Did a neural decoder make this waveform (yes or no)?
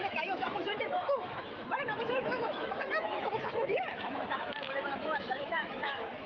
yes